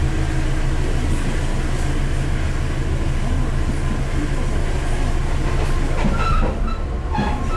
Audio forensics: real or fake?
real